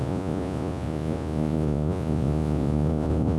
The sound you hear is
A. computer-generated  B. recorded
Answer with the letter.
A